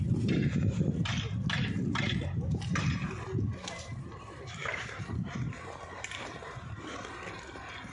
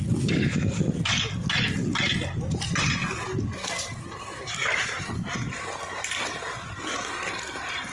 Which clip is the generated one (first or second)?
first